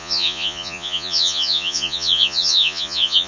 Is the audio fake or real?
fake